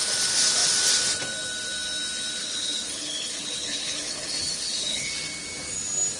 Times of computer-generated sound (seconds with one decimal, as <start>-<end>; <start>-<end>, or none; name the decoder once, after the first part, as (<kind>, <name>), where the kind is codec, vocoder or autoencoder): 2.4-5.1 (codec, HILCodec)